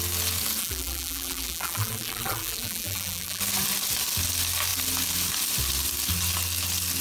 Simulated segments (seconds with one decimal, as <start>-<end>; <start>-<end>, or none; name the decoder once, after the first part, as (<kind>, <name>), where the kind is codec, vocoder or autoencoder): 0.6-3.4 (vocoder, BigVGAN v2)